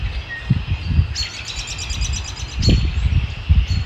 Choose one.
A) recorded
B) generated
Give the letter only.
A